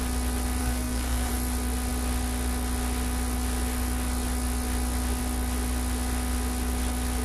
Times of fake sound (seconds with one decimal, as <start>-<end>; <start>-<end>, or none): 0.6-1.3